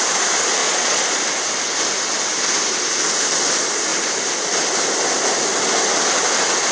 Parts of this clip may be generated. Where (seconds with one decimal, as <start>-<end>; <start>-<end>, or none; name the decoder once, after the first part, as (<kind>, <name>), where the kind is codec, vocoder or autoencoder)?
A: 0.6-1.2 (vocoder, Vocos)